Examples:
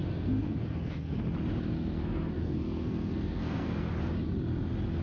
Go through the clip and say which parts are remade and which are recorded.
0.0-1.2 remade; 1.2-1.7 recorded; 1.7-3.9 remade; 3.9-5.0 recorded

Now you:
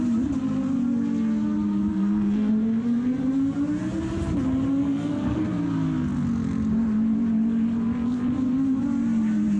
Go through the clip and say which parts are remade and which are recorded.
0.0-1.9 recorded; 1.9-2.5 remade; 2.5-4.8 recorded; 4.8-5.5 remade; 5.5-9.6 recorded

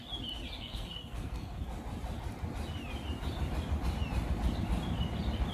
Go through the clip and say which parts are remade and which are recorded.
0.0-0.6 recorded; 0.6-1.6 remade; 1.6-5.5 recorded

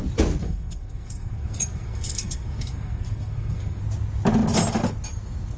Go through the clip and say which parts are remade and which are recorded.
0.0-0.4 recorded; 0.4-3.8 remade; 3.8-5.6 recorded